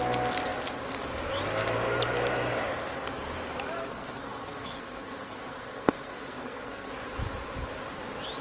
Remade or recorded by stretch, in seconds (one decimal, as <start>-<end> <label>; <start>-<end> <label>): 0.0-3.8 recorded; 3.8-6.9 remade; 6.9-8.4 recorded